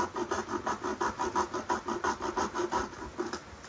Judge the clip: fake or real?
real